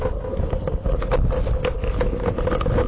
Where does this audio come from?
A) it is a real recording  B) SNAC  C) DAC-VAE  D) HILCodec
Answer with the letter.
A